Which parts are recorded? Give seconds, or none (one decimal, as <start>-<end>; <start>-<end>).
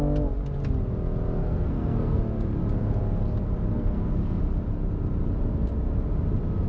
0.0-1.4; 2.2-3.7; 4.4-6.7